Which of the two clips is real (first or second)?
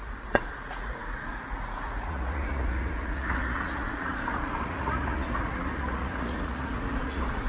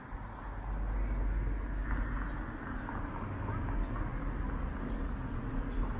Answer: second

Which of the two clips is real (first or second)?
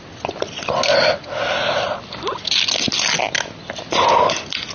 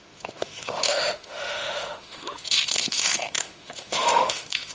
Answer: first